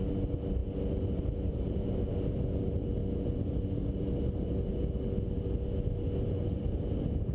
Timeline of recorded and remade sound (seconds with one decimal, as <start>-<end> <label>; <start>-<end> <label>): 0.0-7.3 recorded